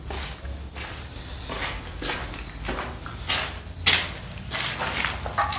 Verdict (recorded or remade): recorded